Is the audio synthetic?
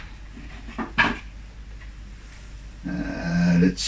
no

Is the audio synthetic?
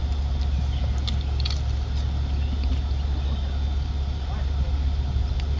no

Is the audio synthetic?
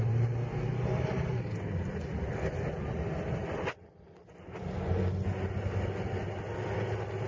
no